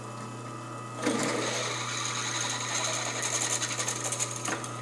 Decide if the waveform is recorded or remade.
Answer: recorded